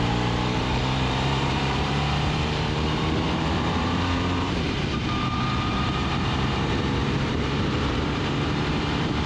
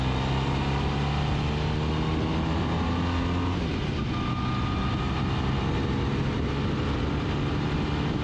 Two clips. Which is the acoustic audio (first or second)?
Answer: second